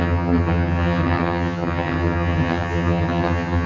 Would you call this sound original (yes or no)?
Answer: no